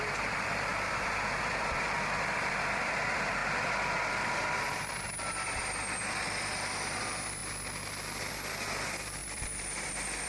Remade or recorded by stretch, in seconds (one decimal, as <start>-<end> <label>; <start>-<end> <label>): 0.0-3.4 remade; 3.4-4.1 recorded; 4.1-7.4 remade; 7.4-8.3 recorded; 8.3-10.3 remade